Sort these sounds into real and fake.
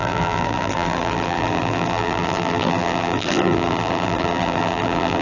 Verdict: fake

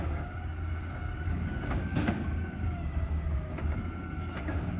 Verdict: fake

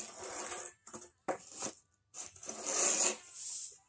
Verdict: real